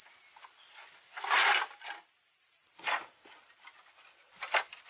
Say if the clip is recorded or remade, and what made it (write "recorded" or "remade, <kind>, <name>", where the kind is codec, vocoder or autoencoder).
recorded